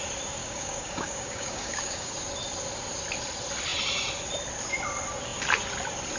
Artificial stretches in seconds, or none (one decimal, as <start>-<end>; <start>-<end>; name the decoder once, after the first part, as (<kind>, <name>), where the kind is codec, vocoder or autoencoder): 0.4-2.1 (codec, DAC)